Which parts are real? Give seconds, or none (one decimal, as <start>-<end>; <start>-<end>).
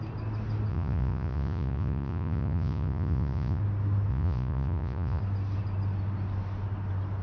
0.0-0.7; 3.6-4.1; 5.2-7.2